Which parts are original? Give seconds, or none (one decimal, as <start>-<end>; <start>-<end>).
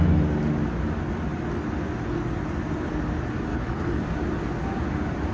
0.0-3.5; 4.0-5.3